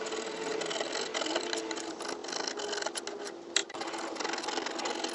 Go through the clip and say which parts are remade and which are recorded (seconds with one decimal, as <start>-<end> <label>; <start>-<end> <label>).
0.0-5.1 recorded